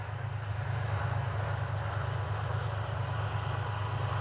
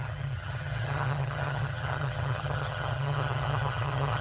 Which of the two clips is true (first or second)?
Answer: first